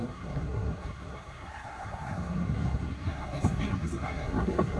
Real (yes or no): no